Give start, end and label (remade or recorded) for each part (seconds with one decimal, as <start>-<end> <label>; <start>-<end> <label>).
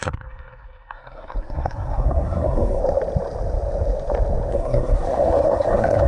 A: 0.0-2.8 remade; 2.8-4.5 recorded; 4.5-6.1 remade